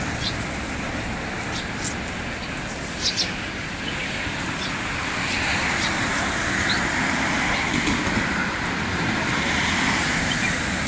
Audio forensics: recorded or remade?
recorded